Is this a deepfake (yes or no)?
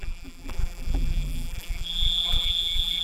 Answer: yes